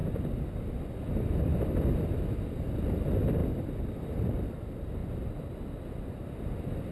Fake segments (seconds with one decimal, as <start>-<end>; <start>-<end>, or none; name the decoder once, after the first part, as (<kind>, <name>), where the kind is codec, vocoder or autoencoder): 1.4-5.0 (vocoder, BigVGAN v2); 5.7-6.9